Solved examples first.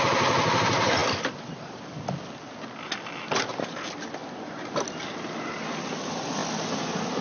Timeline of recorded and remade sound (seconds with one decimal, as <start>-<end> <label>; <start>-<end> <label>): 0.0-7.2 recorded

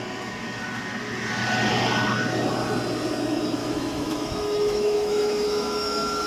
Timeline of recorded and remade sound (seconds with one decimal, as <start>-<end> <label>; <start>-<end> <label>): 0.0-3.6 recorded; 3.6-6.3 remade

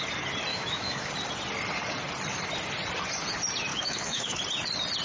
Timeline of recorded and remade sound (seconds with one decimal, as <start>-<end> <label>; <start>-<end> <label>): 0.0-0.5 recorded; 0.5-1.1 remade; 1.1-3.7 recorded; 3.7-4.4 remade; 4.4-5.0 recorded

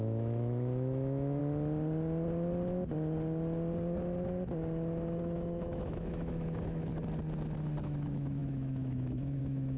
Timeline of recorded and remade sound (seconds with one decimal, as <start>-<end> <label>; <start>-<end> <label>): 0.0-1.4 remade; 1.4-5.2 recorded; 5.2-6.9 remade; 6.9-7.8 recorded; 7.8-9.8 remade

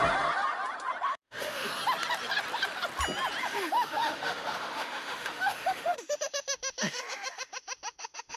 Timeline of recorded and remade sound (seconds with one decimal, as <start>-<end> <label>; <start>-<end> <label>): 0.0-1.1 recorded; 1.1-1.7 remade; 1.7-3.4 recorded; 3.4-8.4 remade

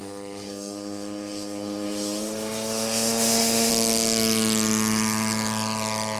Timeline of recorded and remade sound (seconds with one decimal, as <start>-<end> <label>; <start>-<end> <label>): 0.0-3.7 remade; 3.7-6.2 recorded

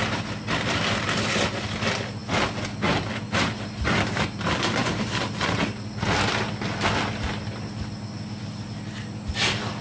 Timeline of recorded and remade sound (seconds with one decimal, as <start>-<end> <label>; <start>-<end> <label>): 0.0-9.8 recorded

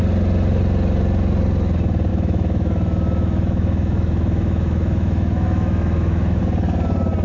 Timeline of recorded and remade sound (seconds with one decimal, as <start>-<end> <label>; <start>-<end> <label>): 0.0-2.1 recorded; 2.1-6.4 remade; 6.4-7.2 recorded